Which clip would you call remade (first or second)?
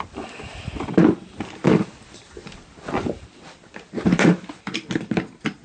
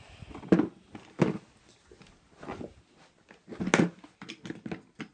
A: first